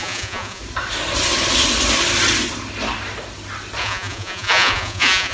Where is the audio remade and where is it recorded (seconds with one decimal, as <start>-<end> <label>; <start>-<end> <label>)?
0.0-0.6 remade; 0.6-3.8 recorded; 3.8-5.3 remade